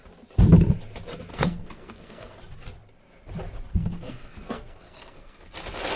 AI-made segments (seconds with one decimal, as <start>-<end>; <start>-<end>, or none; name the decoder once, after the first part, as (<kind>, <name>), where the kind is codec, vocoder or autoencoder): 1.3-2.4 (codec, SNAC); 3.7-5.5